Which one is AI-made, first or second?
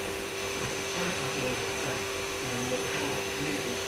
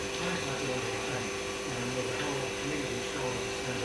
first